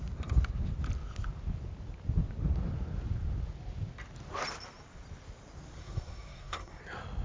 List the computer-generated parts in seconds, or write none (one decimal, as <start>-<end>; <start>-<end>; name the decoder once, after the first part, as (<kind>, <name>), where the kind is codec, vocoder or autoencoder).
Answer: 5.8-6.8 (codec, SNAC)